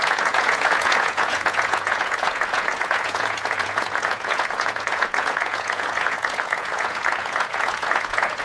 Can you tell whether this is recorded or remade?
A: remade